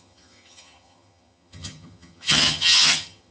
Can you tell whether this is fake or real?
fake